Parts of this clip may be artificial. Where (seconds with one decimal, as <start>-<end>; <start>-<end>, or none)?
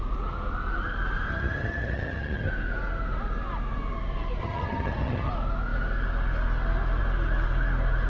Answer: 1.3-2.5; 4.4-5.3